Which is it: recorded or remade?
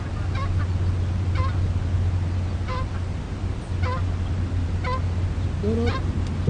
recorded